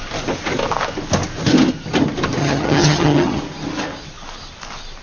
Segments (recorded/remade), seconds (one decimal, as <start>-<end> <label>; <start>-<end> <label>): 0.0-2.4 recorded; 2.4-3.4 remade; 3.4-5.0 recorded